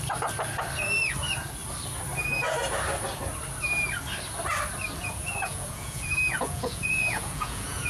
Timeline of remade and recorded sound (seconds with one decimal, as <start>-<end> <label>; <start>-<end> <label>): 0.0-5.0 recorded; 5.0-7.9 remade